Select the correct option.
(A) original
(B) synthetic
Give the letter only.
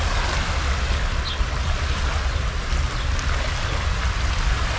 A